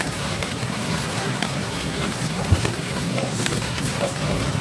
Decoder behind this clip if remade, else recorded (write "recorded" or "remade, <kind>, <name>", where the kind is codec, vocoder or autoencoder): remade, codec, SNAC